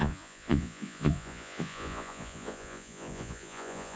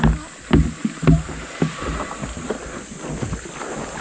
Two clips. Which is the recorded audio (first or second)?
second